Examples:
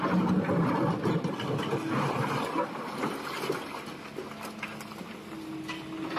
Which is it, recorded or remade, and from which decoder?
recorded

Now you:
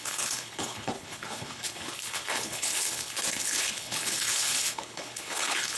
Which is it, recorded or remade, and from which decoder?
remade, codec, HILCodec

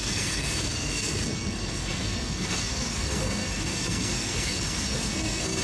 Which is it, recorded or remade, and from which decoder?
remade, codec, SNAC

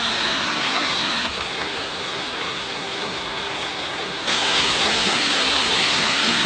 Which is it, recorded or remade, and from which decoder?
remade, codec, SNAC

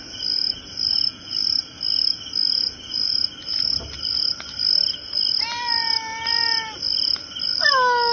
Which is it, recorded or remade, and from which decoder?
recorded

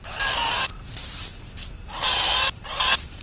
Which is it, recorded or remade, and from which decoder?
recorded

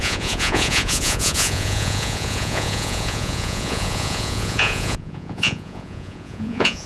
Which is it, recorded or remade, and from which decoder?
remade, vocoder, Vocos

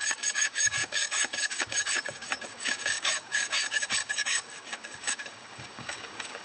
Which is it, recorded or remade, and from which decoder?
remade, codec, DAC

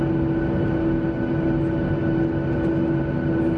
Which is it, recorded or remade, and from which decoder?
recorded